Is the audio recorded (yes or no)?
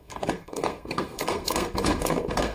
no